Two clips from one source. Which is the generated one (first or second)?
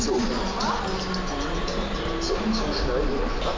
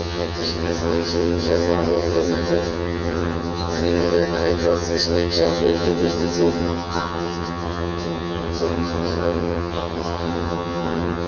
second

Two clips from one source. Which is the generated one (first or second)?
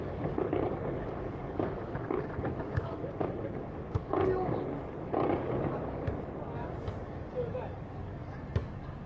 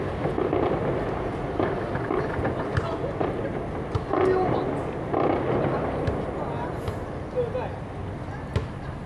first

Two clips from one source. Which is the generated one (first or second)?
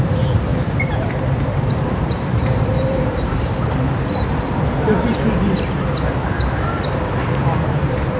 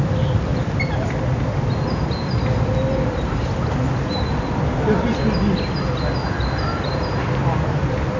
first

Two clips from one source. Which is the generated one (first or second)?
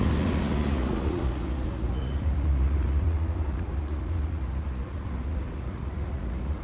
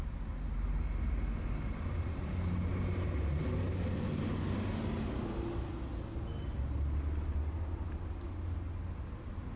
first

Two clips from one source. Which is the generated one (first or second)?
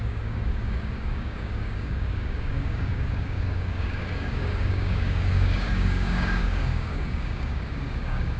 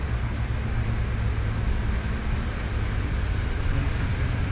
first